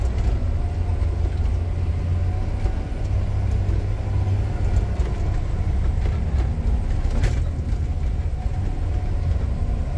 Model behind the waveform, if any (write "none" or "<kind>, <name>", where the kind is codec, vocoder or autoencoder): none